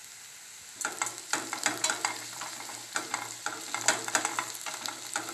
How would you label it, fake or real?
real